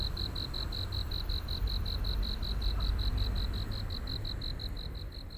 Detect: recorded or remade recorded